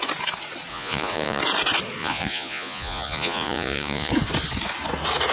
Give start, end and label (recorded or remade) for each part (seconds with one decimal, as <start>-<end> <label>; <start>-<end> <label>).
0.0-0.7 recorded; 0.7-1.4 remade; 1.4-2.0 recorded; 2.0-4.1 remade; 4.1-5.3 recorded